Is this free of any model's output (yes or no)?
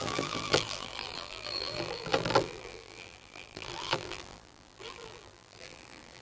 no